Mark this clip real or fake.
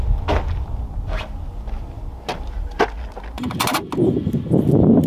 real